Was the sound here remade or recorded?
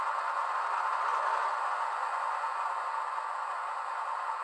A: remade